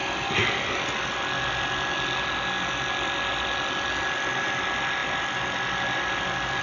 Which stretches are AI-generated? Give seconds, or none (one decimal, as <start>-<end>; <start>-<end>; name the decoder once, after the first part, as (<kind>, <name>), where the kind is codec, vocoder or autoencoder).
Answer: none